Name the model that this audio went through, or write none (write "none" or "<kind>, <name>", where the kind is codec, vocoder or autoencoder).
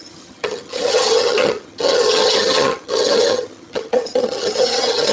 vocoder, HiFi-GAN